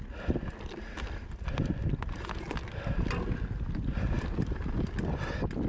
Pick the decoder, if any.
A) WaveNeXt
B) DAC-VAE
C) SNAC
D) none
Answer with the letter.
D